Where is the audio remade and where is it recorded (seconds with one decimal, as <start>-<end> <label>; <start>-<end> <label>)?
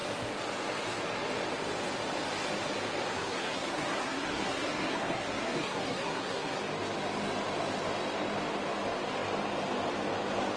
0.0-3.1 recorded; 3.1-6.6 remade; 6.6-10.6 recorded